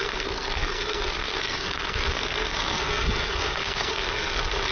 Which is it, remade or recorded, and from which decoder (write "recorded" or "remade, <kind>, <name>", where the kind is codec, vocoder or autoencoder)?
remade, codec, SNAC